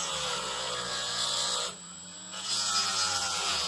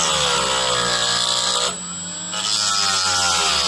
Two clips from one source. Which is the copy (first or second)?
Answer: first